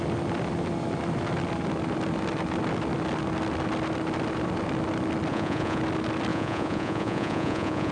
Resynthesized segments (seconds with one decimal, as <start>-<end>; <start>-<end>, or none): 5.3-5.8; 6.3-7.9